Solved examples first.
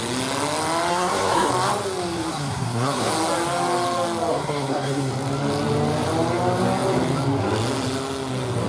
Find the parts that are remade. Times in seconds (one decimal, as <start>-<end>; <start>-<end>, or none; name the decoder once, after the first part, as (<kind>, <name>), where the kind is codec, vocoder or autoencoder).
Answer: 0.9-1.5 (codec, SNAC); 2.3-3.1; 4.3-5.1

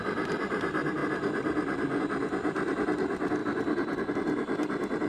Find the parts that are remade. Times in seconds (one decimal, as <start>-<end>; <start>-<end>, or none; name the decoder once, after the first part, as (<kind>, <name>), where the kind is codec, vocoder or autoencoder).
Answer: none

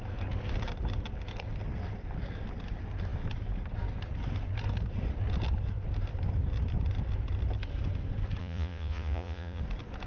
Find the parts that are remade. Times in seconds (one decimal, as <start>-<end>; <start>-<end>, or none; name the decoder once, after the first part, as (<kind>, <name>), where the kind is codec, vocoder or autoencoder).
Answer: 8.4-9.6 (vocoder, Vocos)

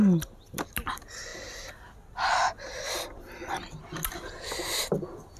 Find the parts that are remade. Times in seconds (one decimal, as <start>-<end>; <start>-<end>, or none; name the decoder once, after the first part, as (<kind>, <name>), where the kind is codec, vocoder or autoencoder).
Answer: none